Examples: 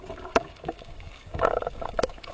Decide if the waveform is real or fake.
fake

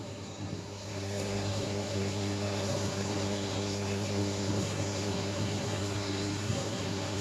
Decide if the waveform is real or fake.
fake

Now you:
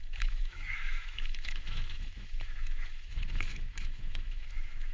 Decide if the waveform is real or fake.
fake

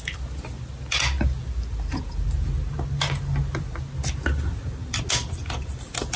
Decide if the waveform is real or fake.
real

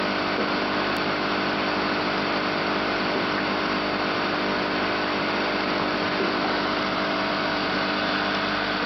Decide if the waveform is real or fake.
real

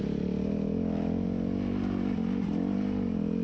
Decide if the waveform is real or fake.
real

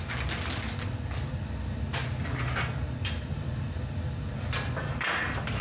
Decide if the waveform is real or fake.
real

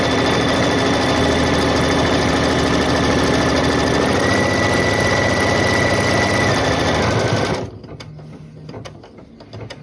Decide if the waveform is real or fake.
real